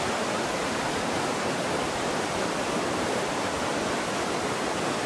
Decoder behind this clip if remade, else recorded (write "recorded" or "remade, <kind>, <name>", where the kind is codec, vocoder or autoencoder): recorded